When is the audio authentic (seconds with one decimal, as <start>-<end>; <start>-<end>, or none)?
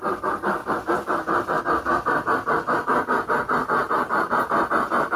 0.0-0.6; 1.6-3.8; 4.4-5.2